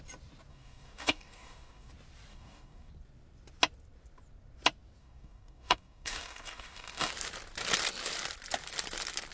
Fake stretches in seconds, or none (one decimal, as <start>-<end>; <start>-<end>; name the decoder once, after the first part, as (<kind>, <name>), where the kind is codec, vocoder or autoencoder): 0.5-1.9 (codec, DAC); 2.3-2.9; 5.0-7.1